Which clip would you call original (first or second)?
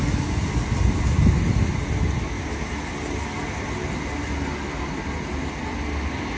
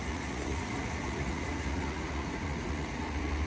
first